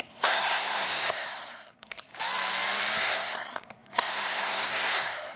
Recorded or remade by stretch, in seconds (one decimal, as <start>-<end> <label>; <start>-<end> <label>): 0.0-2.1 remade; 2.1-3.0 recorded; 3.0-5.4 remade